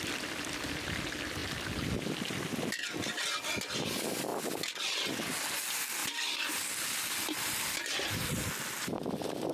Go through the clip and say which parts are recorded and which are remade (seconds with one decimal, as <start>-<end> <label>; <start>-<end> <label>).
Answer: 0.0-9.5 recorded